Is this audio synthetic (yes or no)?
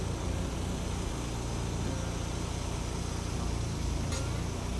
no